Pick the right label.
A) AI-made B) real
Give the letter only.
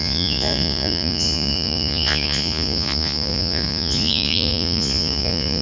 A